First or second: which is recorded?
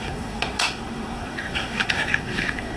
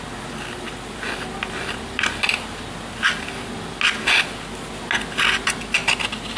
second